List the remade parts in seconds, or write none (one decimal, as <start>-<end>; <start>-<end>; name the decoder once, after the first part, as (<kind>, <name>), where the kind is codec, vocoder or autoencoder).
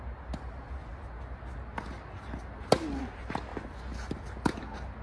none